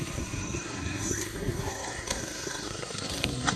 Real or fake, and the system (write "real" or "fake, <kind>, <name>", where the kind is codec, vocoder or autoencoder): fake, codec, SNAC